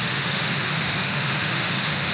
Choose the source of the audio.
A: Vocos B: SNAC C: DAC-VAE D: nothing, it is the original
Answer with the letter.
C